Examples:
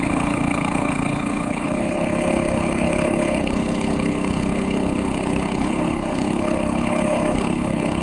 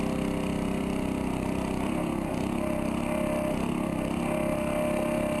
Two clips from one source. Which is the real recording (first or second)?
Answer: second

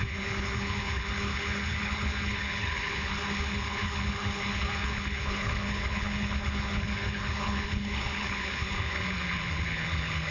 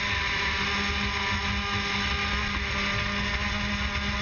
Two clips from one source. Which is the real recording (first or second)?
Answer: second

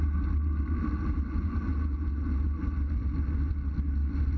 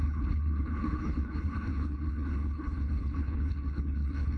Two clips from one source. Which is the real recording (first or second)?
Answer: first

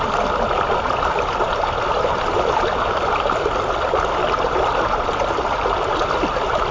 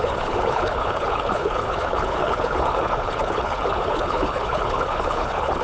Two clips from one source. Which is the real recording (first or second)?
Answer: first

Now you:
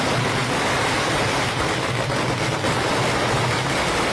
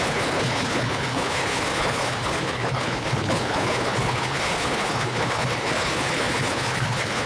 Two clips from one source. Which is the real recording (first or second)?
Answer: first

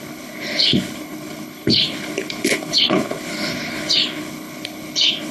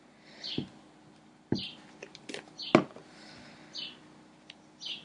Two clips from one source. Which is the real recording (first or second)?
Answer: second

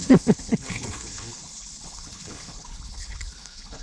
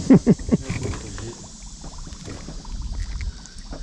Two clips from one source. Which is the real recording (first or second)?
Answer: second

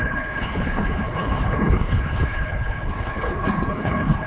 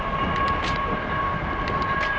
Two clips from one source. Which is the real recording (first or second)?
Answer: second